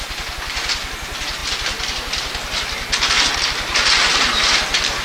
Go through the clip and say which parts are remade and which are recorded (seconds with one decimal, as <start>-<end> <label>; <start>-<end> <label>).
0.0-5.0 recorded